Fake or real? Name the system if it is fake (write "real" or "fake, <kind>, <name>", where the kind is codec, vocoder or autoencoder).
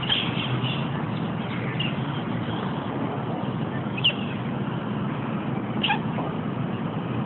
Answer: real